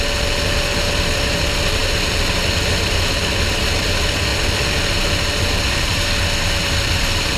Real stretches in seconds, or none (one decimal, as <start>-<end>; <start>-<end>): 0.0-7.4

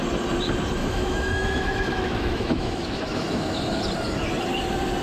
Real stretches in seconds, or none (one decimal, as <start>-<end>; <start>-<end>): 0.0-0.8; 3.8-5.0

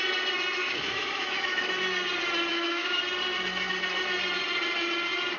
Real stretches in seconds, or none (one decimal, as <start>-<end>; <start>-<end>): 0.0-0.6; 1.7-2.5; 3.0-5.4

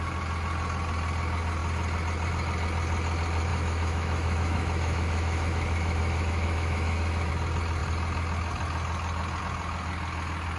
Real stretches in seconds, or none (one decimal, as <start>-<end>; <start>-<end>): 0.0-3.5; 7.3-10.6

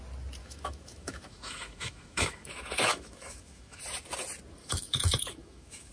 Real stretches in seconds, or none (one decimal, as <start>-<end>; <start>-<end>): 0.0-0.4; 3.8-4.6